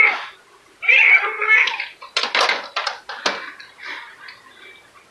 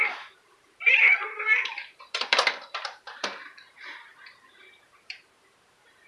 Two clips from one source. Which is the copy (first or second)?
second